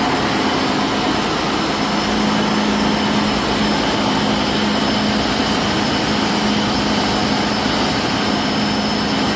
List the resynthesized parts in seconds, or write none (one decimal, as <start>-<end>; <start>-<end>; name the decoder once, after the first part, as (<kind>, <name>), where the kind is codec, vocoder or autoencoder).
none